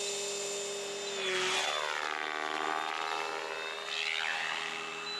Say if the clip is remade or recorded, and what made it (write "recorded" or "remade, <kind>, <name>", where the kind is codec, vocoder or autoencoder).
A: recorded